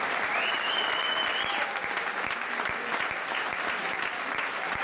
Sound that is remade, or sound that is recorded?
recorded